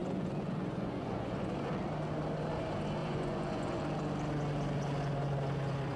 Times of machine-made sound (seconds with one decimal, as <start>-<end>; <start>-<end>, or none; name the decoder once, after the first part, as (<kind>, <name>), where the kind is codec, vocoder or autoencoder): 0.0-1.7 (vocoder, Vocos); 3.0-3.8